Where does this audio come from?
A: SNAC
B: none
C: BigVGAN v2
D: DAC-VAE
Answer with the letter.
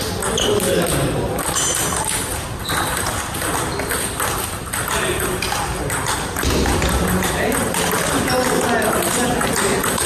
B